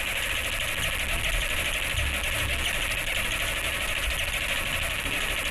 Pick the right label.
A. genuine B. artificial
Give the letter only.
A